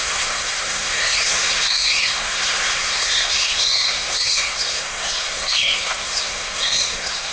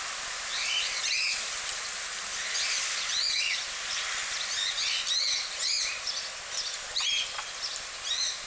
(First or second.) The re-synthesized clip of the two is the first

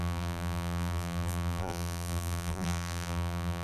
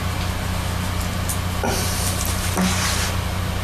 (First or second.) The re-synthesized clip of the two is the first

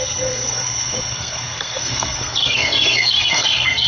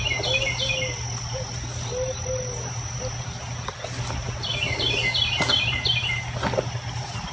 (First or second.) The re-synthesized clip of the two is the first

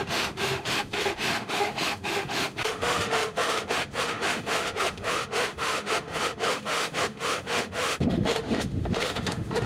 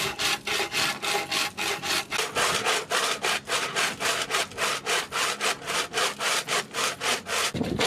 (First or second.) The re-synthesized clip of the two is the first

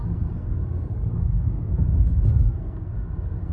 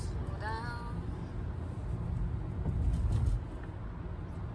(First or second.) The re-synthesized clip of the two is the first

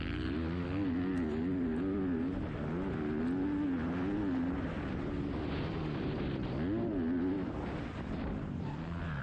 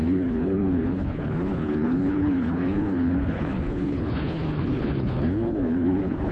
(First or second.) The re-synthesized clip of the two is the second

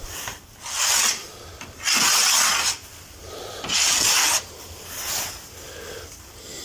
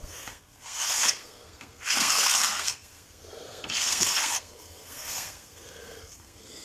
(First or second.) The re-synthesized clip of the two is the second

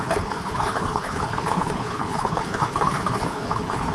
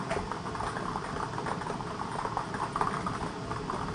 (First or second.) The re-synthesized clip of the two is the first